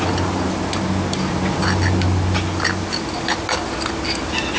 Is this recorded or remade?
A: recorded